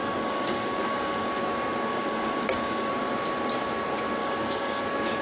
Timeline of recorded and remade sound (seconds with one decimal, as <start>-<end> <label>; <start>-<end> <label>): 0.0-1.3 remade; 1.3-1.9 recorded; 1.9-2.9 remade; 2.9-4.2 recorded; 4.2-4.8 remade; 4.8-5.2 recorded